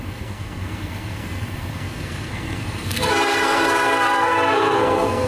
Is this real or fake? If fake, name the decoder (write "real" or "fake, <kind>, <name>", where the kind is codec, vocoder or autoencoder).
fake, codec, SNAC